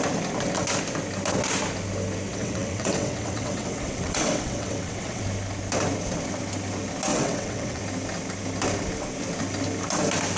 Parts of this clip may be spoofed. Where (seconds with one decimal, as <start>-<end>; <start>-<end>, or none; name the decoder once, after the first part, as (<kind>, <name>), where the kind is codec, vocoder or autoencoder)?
2.3-5.2 (vocoder, WaveNeXt); 7.1-7.8